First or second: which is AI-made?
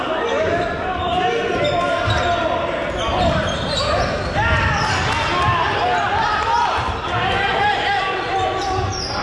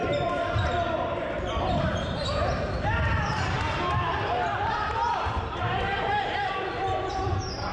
second